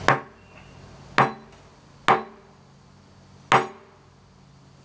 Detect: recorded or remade recorded